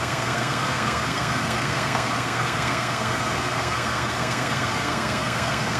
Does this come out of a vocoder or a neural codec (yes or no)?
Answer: yes